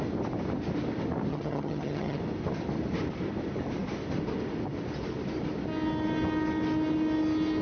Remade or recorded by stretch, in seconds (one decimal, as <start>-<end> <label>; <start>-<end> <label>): 0.0-1.3 recorded; 1.3-2.2 remade; 2.2-7.6 recorded